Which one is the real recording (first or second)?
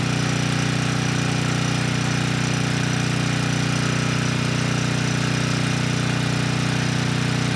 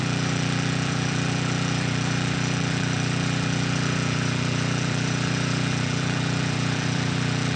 first